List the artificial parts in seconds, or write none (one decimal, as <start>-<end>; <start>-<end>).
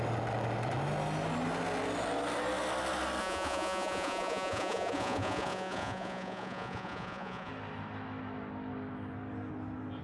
3.2-7.5